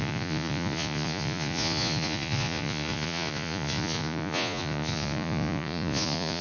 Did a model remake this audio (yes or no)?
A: yes